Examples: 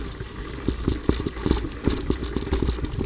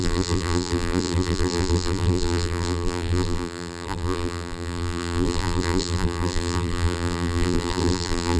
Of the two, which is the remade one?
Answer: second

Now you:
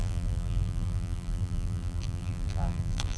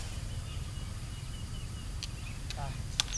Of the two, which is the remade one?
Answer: first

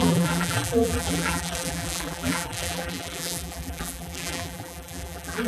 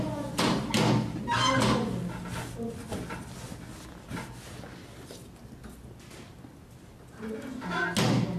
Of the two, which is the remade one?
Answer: first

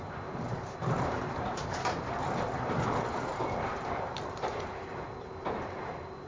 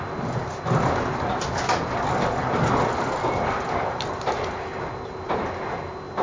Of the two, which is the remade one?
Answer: first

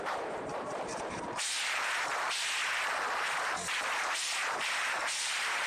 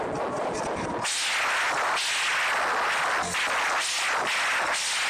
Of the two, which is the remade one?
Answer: first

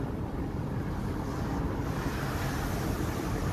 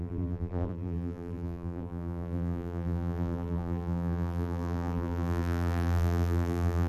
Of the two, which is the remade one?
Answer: second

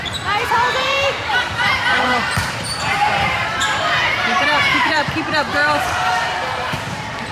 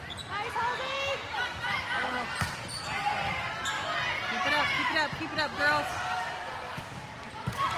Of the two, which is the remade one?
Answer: first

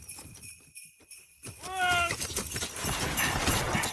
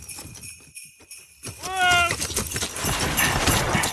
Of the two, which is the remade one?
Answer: first